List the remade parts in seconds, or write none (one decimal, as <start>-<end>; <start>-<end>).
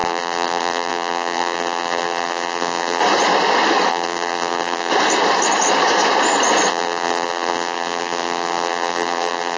0.0-3.0; 3.9-4.9; 6.7-9.6